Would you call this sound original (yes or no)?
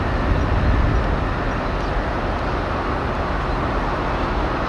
yes